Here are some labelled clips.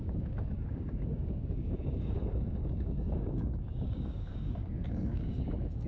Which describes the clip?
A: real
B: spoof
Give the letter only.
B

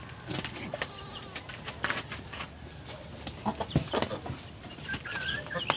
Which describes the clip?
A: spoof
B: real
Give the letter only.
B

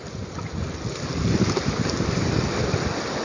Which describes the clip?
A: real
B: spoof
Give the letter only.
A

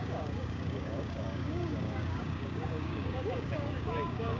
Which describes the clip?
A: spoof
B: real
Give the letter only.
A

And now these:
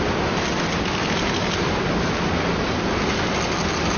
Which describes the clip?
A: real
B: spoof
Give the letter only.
A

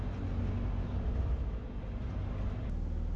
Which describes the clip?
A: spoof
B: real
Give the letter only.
B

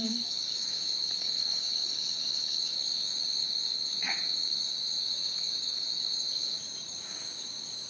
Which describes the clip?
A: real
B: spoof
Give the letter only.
B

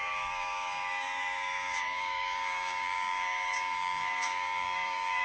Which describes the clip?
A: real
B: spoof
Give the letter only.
B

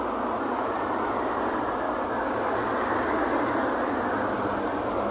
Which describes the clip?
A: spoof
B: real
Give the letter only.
B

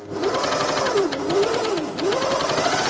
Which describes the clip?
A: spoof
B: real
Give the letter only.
B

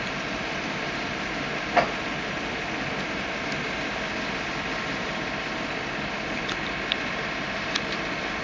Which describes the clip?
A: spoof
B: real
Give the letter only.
B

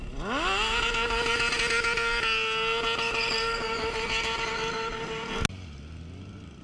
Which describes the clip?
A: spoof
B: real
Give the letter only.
B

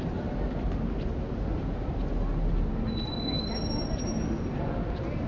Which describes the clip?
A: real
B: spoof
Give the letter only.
A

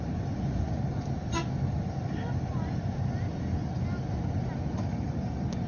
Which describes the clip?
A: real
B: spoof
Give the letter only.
A